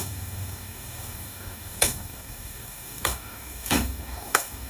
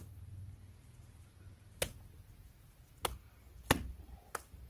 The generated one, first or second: first